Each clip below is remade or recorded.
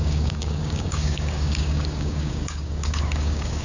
remade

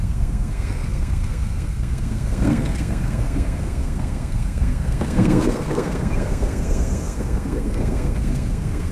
remade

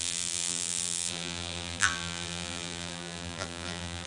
remade